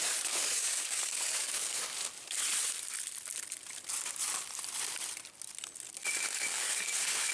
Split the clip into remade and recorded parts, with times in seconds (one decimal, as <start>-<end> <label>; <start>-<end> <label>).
0.0-2.0 remade; 2.0-6.2 recorded; 6.2-7.3 remade